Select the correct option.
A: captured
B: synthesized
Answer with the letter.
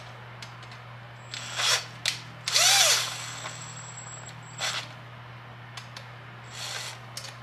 A